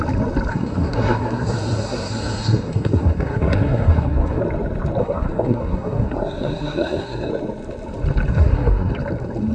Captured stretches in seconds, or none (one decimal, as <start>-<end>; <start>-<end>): 0.0-0.5; 4.4-5.0; 7.3-8.3; 8.9-9.5